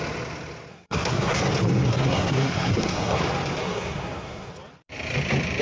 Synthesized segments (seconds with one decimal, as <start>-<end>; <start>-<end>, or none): 0.7-1.4; 1.9-3.2; 3.6-4.5